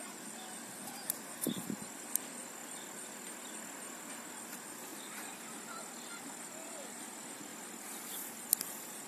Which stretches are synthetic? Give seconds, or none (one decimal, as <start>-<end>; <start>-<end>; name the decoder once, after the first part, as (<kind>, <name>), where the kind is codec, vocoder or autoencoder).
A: 2.6-4.3 (vocoder, BigVGAN v2); 7.5-8.3

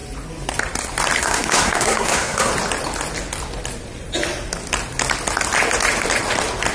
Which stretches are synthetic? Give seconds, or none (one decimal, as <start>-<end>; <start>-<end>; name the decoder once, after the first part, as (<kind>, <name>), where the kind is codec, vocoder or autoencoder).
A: 1.2-2.5 (codec, SNAC)

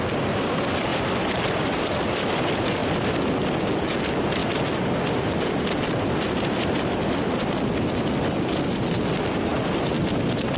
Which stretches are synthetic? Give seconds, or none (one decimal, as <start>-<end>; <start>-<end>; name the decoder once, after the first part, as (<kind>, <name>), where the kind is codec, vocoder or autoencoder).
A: 2.8-3.3 (vocoder, BigVGAN v2); 4.4-5.4

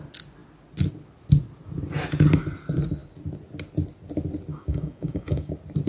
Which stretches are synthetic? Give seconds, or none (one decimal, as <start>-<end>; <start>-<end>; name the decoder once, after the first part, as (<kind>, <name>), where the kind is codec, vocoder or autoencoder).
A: 4.5-5.5 (codec, DAC)

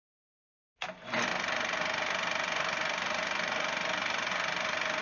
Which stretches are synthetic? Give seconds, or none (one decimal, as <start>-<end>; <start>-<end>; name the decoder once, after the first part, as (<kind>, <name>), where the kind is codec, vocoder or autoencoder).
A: none

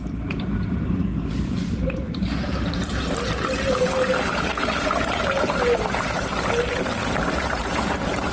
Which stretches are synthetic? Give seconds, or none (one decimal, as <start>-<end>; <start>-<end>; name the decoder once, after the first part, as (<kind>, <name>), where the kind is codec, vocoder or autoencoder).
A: 0.0-8.3 (vocoder, BigVGAN v2)